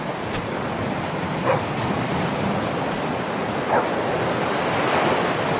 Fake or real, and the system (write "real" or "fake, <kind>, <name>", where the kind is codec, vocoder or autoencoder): real